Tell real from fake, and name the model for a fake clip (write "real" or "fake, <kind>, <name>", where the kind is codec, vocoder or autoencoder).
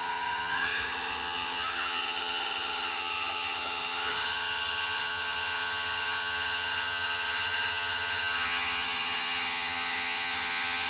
fake, vocoder, HiFi-GAN